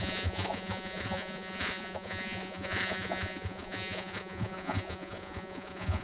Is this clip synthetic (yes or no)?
yes